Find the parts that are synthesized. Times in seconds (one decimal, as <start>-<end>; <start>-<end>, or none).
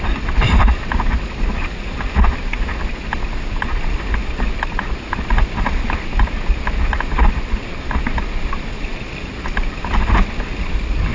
none